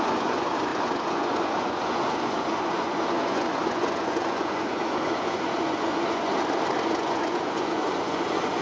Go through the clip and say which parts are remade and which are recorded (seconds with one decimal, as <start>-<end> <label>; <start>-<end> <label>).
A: 0.0-6.3 remade; 6.3-6.9 recorded; 6.9-8.6 remade